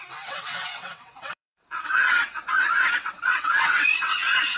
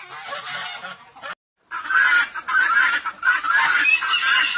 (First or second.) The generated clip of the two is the first